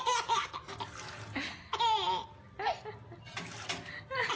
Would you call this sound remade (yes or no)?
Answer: no